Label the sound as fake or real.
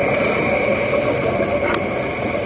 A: real